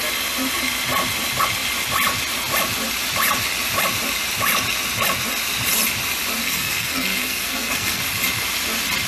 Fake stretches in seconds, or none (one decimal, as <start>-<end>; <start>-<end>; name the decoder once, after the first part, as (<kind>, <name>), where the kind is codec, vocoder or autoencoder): 6.4-8.0 (codec, SNAC)